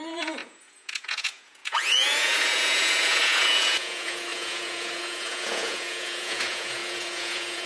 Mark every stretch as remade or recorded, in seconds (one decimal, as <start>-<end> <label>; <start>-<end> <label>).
0.0-7.7 remade